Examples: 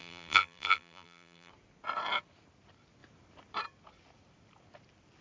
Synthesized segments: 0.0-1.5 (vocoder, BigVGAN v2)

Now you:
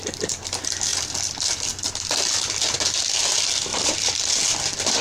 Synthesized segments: 3.7-4.3 (vocoder, BigVGAN v2)

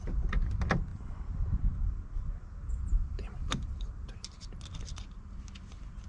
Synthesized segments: 0.9-4.6 (vocoder, BigVGAN v2)